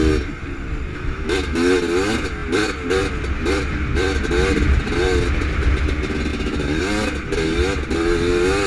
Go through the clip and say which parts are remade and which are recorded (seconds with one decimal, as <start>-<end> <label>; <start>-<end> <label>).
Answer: 0.0-0.9 recorded; 0.9-1.8 remade; 1.8-6.3 recorded; 6.3-6.8 remade; 6.8-8.7 recorded